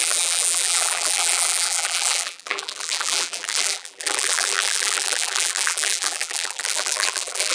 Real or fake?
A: fake